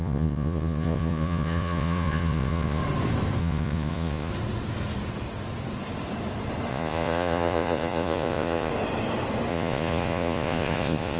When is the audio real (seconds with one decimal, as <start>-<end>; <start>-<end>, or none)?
2.8-3.4; 4.3-6.7; 8.7-9.5